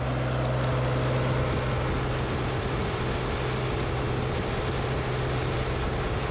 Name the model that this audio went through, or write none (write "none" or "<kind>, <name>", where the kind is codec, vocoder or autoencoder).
none